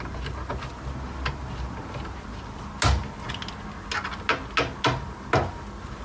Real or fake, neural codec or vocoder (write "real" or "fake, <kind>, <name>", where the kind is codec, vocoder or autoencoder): real